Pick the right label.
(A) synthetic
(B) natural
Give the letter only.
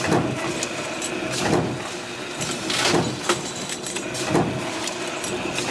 B